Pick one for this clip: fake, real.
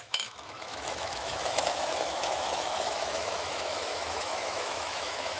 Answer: fake